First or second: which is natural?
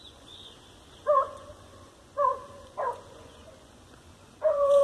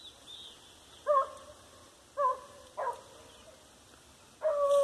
second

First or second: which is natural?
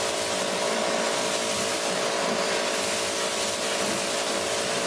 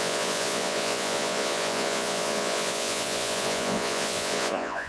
first